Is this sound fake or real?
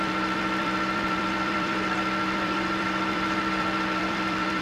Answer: fake